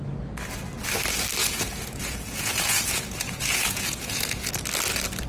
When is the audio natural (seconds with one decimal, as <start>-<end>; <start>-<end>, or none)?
0.0-1.4; 4.6-5.3